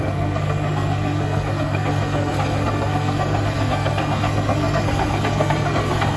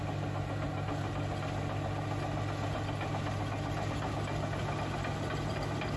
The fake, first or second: first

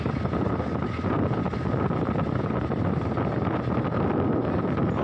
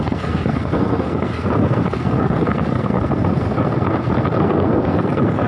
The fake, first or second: second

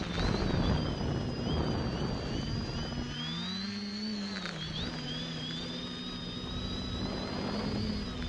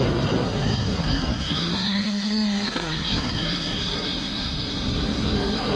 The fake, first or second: second